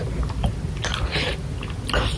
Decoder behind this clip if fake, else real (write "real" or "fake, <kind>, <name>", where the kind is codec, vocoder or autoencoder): real